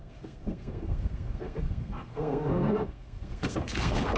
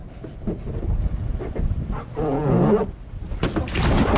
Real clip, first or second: second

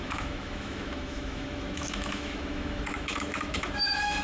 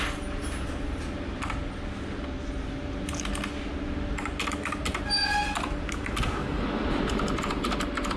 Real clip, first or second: second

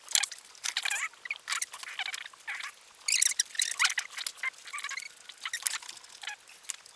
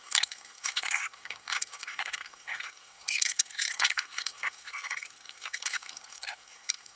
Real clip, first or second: first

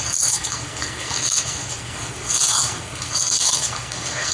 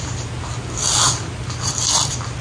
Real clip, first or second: second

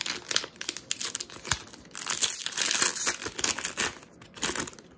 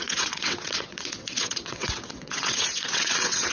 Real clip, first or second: first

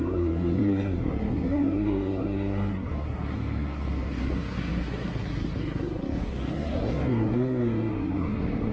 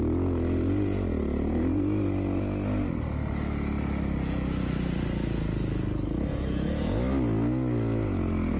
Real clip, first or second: second